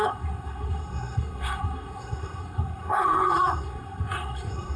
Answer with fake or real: fake